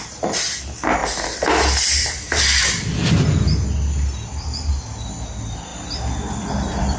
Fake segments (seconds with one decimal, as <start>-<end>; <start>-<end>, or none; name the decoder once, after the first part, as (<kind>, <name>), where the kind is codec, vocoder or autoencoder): none